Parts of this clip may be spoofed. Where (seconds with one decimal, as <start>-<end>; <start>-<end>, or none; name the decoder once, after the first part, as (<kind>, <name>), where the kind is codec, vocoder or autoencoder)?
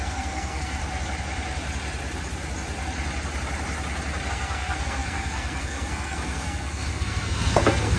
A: 0.0-0.8 (codec, SNAC); 4.3-8.0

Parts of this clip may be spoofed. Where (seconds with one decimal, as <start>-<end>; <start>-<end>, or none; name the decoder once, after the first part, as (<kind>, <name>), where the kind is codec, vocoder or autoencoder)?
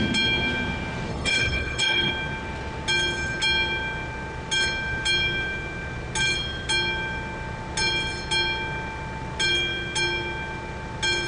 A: 1.1-2.1 (codec, HILCodec)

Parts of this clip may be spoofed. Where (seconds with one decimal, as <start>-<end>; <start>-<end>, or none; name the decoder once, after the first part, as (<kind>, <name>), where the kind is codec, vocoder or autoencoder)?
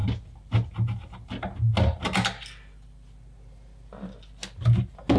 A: none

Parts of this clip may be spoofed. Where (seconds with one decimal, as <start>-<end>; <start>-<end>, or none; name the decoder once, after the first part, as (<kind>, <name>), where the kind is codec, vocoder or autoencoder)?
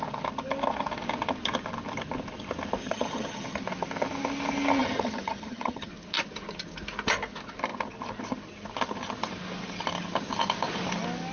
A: 2.8-3.6 (vocoder, HiFi-GAN); 4.8-5.9